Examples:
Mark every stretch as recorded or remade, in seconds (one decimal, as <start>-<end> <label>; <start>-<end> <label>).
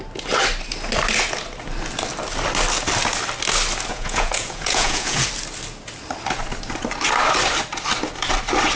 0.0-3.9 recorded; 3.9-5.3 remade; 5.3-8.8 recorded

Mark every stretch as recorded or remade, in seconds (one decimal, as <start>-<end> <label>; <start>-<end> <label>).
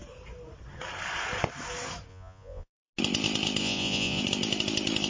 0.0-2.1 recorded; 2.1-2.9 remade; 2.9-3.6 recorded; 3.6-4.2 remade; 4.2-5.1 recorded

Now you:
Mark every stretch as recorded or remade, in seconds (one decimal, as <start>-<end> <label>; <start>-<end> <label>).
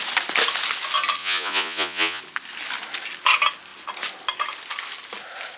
0.0-1.2 recorded; 1.2-2.2 remade; 2.2-5.6 recorded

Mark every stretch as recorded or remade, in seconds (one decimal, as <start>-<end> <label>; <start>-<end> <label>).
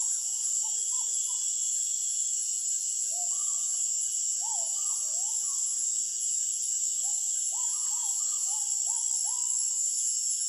0.0-8.6 remade; 8.6-9.7 recorded; 9.7-10.5 remade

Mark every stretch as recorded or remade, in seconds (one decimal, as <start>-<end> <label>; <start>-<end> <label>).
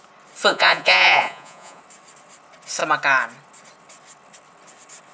0.0-0.5 recorded; 0.5-1.8 remade; 1.8-5.1 recorded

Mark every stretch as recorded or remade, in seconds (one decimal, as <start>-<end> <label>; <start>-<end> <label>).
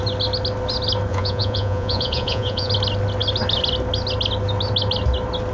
0.0-1.1 recorded; 1.1-2.7 remade; 2.7-5.5 recorded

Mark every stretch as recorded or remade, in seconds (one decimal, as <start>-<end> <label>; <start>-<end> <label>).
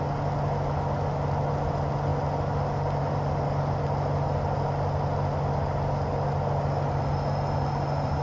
0.0-8.2 recorded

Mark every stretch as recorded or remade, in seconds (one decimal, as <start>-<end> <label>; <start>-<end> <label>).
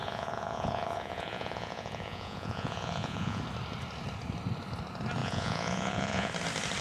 0.0-3.4 remade; 3.4-5.2 recorded; 5.2-6.3 remade; 6.3-6.8 recorded